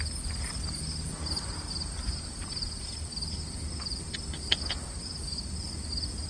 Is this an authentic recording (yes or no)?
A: yes